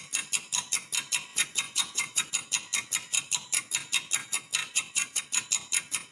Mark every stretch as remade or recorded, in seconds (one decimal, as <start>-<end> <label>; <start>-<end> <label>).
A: 0.0-1.3 recorded; 1.3-2.3 remade; 2.3-4.6 recorded; 4.6-5.2 remade; 5.2-6.1 recorded